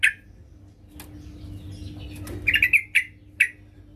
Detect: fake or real real